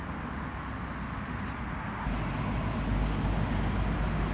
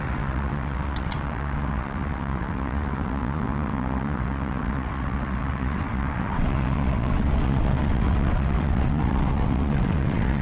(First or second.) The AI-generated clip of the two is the second